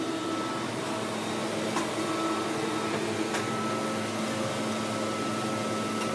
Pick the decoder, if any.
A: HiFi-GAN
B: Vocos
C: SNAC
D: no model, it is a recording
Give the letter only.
D